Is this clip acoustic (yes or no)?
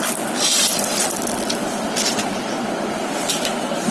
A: yes